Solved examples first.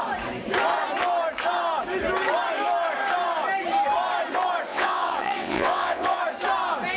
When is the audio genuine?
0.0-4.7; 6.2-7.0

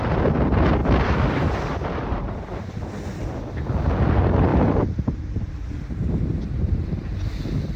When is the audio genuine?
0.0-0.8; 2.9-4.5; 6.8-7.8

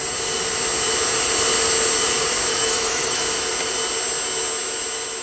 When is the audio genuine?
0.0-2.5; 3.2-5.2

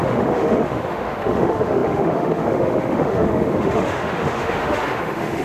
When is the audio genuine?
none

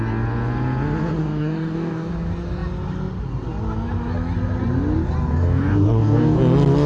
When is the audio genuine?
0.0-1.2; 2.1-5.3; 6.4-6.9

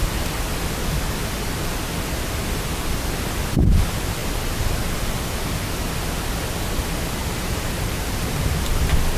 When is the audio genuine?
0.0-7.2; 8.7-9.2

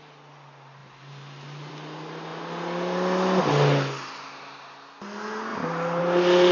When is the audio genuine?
0.0-6.5